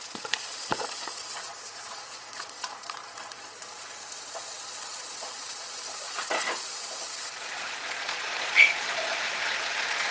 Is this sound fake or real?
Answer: fake